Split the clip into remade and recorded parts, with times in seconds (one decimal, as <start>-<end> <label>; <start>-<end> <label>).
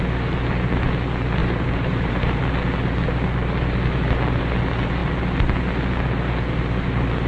0.0-1.4 recorded; 1.4-2.4 remade; 2.4-7.3 recorded